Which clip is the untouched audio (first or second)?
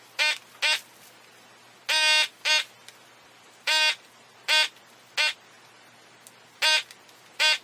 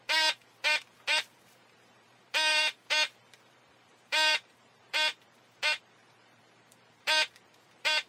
first